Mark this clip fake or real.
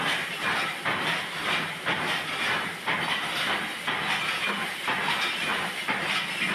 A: real